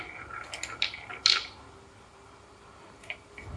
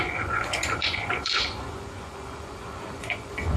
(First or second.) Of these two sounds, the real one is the first